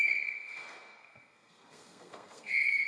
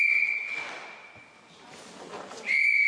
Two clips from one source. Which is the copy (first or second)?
first